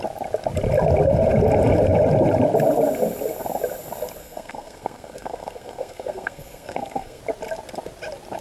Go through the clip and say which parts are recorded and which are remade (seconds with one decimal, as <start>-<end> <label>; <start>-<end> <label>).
0.0-4.2 recorded; 4.2-7.2 remade; 7.2-8.4 recorded